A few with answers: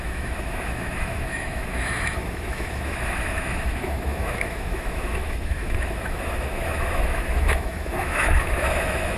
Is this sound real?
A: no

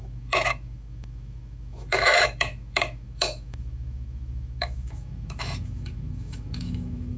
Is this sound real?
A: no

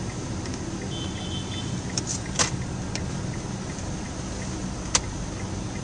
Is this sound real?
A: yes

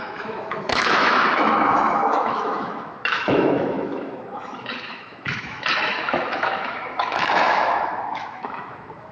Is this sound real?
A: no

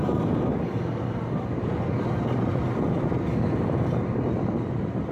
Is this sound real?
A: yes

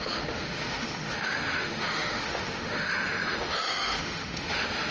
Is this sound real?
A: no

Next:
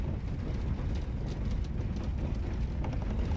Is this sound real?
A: yes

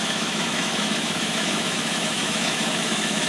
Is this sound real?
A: no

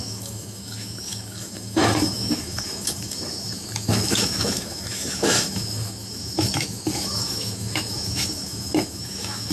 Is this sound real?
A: no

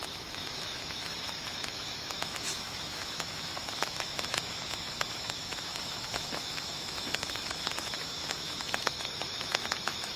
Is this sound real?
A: no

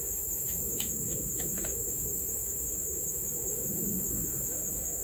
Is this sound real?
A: no